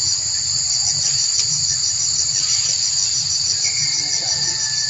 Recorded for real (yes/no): yes